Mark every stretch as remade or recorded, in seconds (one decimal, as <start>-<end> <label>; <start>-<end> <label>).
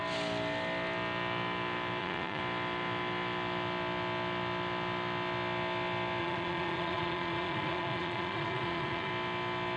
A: 0.0-2.0 recorded; 2.0-2.4 remade; 2.4-6.2 recorded; 6.2-9.1 remade; 9.1-9.8 recorded